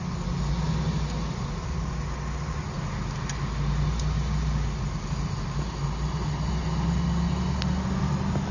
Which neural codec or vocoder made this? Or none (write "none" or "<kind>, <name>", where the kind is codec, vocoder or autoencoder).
none